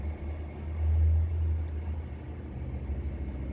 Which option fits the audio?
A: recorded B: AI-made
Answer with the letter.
A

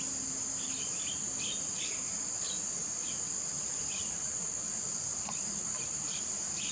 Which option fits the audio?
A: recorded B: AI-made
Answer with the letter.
A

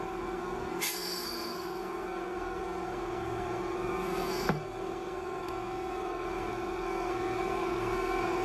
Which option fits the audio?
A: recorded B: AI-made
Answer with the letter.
B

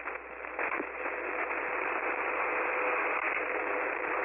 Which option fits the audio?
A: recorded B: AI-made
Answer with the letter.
A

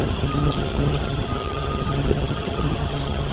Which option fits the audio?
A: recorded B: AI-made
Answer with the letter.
B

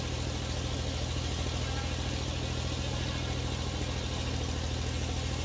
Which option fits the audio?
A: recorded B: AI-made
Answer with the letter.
A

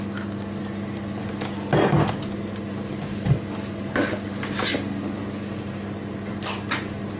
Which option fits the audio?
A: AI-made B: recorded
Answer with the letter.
B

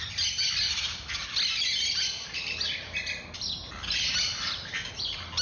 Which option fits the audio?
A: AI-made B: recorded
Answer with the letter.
B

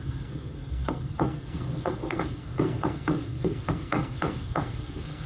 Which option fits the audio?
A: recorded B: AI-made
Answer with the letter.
B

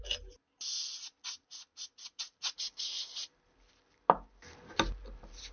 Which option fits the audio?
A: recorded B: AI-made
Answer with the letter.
A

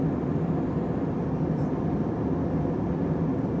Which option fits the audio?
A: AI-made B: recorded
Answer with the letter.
B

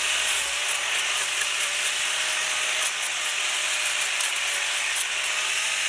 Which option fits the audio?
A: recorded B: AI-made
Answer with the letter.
A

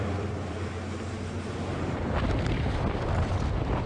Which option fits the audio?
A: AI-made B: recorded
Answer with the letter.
A